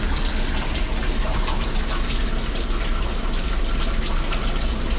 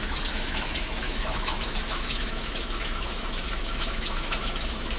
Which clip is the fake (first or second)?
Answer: second